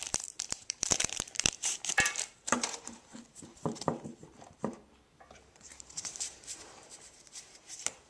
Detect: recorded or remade remade